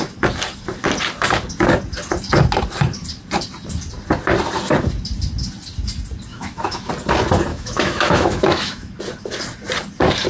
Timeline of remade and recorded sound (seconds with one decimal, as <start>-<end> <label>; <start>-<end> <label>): 0.0-6.3 recorded; 6.3-6.9 remade; 6.9-7.5 recorded; 7.5-8.9 remade; 8.9-10.3 recorded